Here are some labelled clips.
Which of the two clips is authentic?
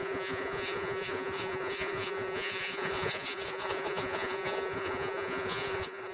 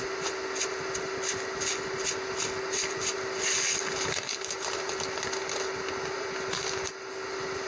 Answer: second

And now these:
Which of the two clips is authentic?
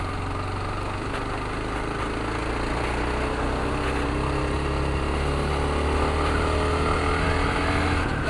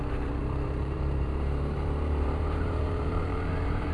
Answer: first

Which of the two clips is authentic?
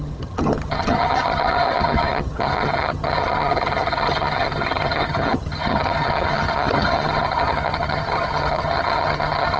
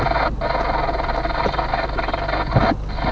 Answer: second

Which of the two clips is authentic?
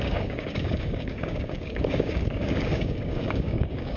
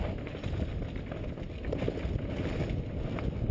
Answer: second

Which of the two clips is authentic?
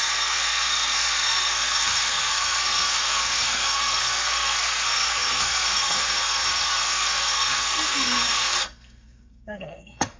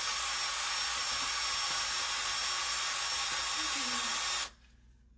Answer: second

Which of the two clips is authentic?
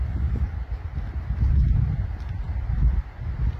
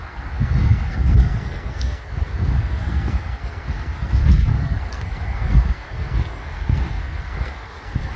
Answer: first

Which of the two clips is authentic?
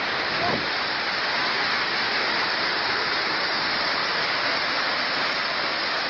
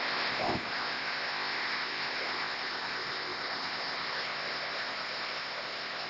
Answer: first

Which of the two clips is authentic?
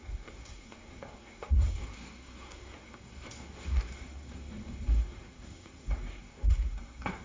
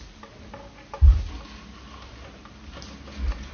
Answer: second